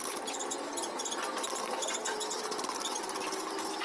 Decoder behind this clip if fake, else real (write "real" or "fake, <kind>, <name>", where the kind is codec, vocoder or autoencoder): real